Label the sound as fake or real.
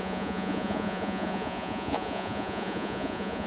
fake